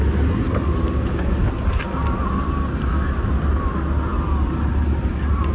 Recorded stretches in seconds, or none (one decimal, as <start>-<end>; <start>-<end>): 0.0-5.5

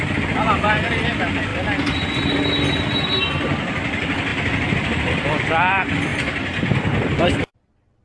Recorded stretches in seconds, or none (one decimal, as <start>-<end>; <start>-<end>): 1.5-3.1; 6.1-7.0

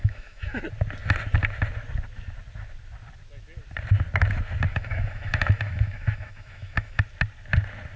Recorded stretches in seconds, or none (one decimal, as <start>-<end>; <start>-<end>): 0.6-4.7; 7.0-8.0

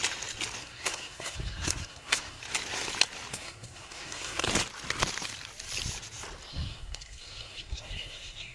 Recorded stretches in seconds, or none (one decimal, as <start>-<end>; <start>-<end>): 0.0-0.6; 2.4-3.3; 4.5-6.5

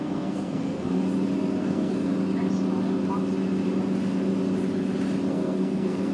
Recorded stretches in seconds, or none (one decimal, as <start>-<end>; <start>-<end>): 1.0-1.6; 2.1-5.3

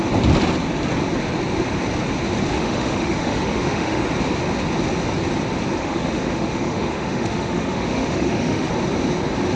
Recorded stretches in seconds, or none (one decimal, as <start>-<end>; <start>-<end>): 0.0-2.5; 4.0-5.8; 8.7-9.6

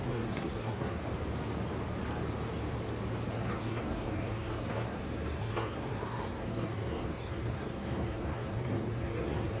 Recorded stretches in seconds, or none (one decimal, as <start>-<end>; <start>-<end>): 1.0-3.3

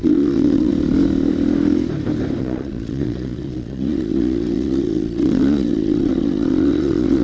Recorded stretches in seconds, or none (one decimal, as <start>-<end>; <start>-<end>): 0.7-2.4